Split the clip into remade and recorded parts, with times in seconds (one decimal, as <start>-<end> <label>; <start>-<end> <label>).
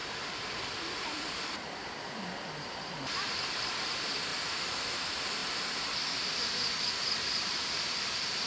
0.0-2.6 recorded; 2.6-4.3 remade; 4.3-4.8 recorded; 4.8-8.5 remade